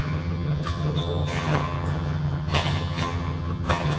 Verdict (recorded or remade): remade